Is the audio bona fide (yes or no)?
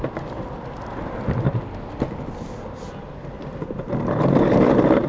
yes